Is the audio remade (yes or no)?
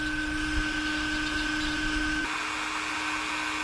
no